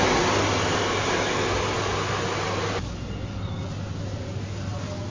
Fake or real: real